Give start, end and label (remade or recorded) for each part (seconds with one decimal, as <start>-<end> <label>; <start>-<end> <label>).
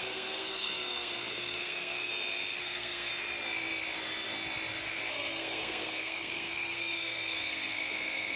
0.0-2.1 remade; 2.1-2.6 recorded; 2.6-3.1 remade; 3.1-5.1 recorded; 5.1-8.4 remade